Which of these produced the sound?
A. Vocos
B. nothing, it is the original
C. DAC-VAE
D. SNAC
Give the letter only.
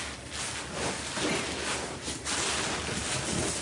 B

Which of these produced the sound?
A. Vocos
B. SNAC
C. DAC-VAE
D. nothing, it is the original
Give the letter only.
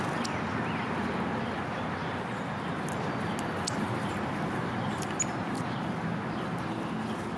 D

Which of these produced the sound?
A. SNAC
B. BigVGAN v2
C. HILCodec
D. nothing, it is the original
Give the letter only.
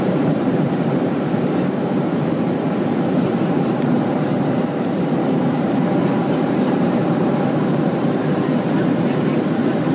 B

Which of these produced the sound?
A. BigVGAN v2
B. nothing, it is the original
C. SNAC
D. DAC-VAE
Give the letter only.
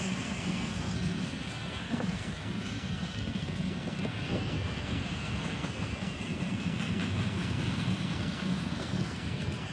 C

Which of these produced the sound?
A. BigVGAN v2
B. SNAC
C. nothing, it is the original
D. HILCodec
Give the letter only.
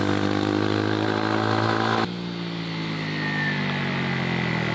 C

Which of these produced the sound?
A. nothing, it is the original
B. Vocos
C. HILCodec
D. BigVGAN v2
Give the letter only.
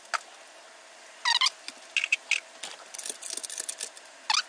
A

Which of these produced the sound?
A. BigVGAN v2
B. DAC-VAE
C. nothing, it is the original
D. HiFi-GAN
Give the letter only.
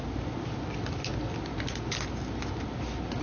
C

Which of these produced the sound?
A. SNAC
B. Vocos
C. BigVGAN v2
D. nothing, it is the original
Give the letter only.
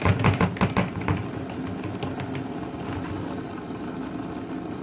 D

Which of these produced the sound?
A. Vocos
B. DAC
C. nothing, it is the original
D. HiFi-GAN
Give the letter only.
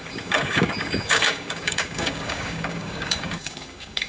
B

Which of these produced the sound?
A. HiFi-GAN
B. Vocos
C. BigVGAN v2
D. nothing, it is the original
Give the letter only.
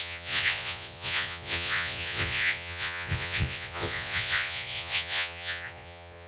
B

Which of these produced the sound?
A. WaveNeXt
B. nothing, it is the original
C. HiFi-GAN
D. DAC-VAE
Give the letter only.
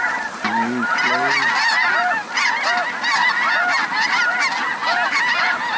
B